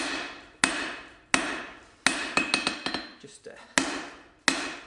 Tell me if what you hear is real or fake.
real